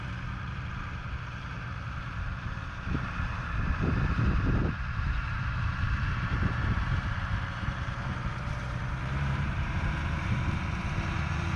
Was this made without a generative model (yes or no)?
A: no